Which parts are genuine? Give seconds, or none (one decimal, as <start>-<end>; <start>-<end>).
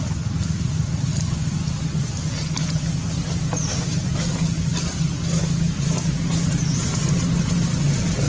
0.0-8.3